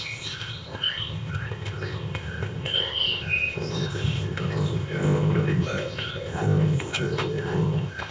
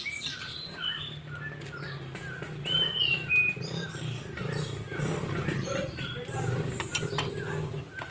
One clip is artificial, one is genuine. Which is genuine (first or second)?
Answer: second